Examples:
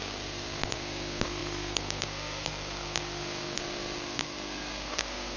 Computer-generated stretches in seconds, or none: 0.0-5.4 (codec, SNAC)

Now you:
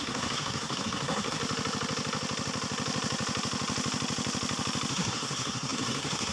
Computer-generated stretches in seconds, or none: 0.0-1.4 (codec, SNAC); 4.9-6.3

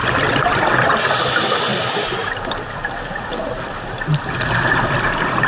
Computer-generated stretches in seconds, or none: none

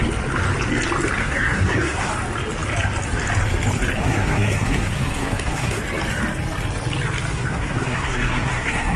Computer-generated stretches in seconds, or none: 1.2-2.1 (codec, SNAC); 4.0-5.8; 7.3-9.0

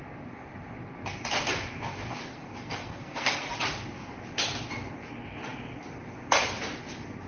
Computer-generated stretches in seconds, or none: 2.3-3.5 (codec, SNAC)

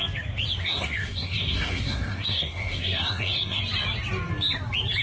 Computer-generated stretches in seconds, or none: 0.6-3.6 (codec, SNAC)